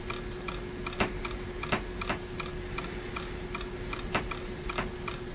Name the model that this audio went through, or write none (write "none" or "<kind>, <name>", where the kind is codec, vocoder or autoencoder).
none